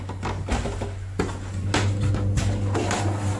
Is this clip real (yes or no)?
yes